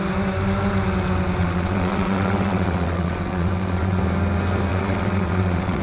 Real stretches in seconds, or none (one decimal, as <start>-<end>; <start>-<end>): 0.0-1.4; 4.0-4.7